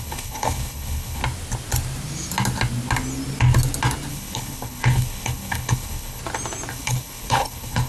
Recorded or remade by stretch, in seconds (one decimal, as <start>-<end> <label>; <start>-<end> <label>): 0.0-1.2 remade; 1.2-4.1 recorded; 4.1-6.2 remade; 6.2-6.7 recorded; 6.7-7.9 remade